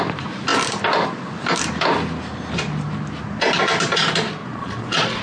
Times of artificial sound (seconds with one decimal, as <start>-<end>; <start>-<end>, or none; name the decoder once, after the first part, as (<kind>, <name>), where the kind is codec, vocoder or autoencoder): 4.4-5.2 (vocoder, Vocos)